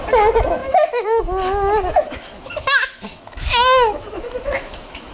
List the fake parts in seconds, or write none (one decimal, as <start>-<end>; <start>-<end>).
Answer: 0.6-1.2; 1.9-5.1